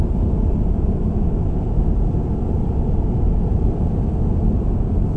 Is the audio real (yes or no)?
yes